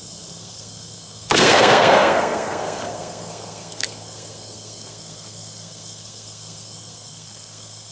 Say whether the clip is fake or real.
fake